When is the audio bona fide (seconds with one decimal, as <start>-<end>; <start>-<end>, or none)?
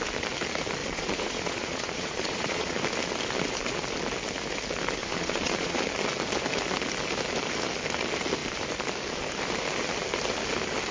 0.0-0.8; 2.8-5.0; 5.8-10.9